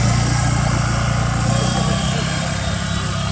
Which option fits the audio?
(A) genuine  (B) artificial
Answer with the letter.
A